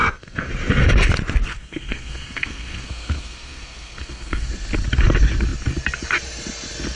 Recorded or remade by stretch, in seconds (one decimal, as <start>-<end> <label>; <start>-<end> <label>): 0.0-0.5 remade; 0.5-1.5 recorded; 1.5-4.5 remade; 4.5-7.0 recorded